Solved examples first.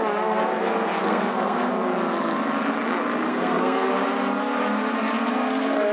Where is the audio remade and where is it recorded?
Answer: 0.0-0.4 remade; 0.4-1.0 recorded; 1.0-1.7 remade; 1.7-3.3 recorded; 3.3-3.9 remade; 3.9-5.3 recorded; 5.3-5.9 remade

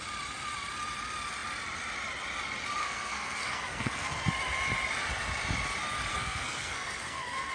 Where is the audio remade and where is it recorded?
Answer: 0.0-2.8 recorded; 2.8-4.3 remade; 4.3-6.1 recorded; 6.1-7.5 remade

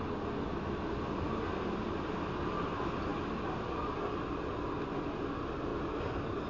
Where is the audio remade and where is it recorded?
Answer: 0.0-6.5 recorded

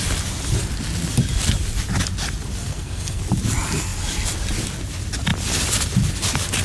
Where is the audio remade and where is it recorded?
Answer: 0.0-2.6 recorded; 2.6-3.2 remade; 3.2-6.6 recorded

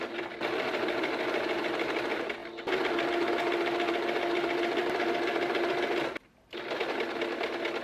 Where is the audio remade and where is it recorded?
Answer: 0.0-7.8 recorded

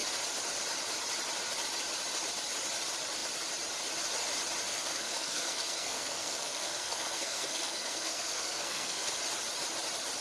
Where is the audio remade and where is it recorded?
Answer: 0.0-4.7 recorded; 4.7-9.2 remade; 9.2-10.2 recorded

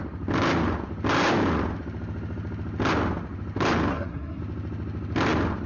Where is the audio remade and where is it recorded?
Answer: 0.0-3.9 recorded; 3.9-4.4 remade; 4.4-5.7 recorded

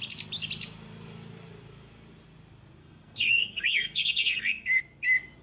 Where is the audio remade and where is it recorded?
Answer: 0.0-2.8 recorded; 2.8-4.8 remade; 4.8-5.4 recorded